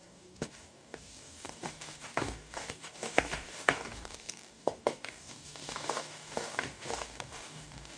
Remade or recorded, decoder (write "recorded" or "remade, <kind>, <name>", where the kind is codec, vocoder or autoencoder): remade, codec, DAC